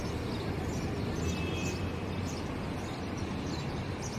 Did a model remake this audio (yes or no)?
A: no